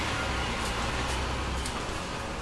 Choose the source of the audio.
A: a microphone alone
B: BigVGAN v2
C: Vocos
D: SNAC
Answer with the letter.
A